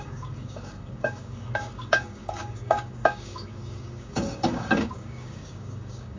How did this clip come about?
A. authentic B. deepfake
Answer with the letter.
B